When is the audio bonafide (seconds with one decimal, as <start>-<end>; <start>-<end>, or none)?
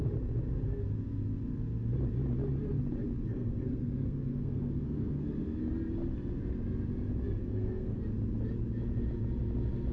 0.0-3.3; 5.6-7.4; 8.0-9.9